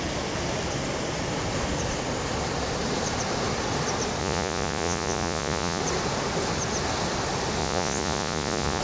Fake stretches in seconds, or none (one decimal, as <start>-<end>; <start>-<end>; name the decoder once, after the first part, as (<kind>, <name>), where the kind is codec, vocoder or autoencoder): 4.2-5.8 (vocoder, Vocos); 7.6-8.8